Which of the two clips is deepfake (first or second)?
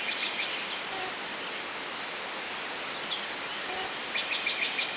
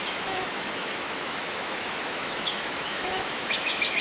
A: second